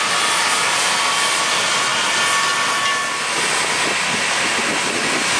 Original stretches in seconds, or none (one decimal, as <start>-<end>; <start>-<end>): 0.0-5.4